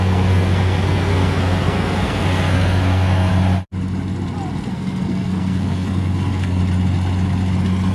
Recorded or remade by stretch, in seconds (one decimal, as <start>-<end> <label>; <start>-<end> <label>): 0.0-3.3 remade; 3.3-4.7 recorded; 4.7-6.6 remade; 6.6-7.9 recorded